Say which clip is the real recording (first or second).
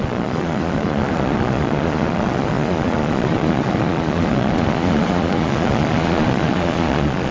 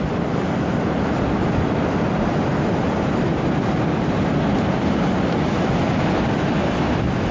second